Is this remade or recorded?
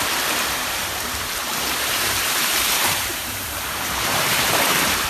remade